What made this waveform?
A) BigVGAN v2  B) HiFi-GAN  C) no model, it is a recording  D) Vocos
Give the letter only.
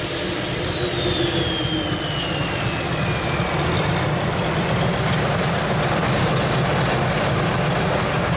C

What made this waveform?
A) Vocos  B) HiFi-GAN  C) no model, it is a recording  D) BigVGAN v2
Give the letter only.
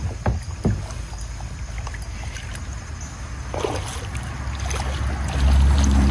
C